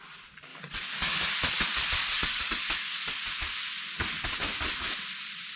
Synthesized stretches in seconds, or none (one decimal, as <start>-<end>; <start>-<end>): 0.5-1.3; 2.0-3.0